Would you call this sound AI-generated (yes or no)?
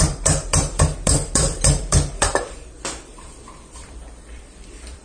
yes